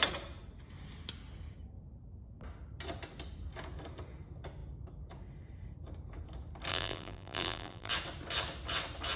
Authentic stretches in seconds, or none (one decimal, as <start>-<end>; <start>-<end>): 0.0-6.7; 7.9-9.2